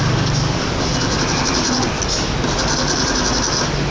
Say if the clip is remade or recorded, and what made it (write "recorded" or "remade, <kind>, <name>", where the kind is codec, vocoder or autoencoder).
recorded